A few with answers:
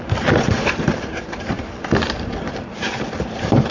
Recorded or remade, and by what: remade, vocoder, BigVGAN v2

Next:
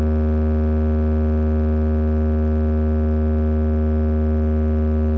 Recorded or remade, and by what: recorded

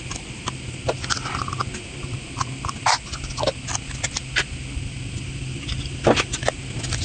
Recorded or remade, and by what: recorded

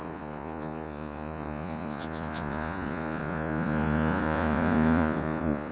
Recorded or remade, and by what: remade, vocoder, Vocos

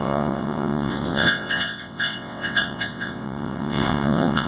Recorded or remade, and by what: remade, vocoder, WaveNeXt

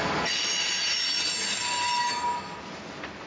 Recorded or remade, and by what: recorded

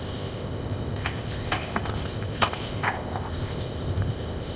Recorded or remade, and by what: remade, codec, ZipCodec